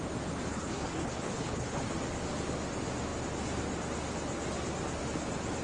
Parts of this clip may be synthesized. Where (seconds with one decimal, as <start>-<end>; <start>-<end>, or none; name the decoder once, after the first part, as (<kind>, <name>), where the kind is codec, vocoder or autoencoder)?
0.5-1.8 (codec, HILCodec)